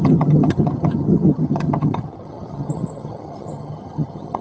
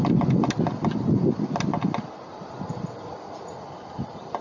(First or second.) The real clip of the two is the second